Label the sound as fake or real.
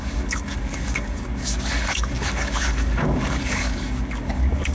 fake